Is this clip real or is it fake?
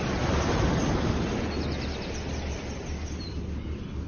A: real